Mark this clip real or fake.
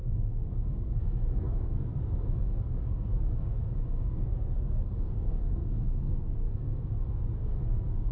fake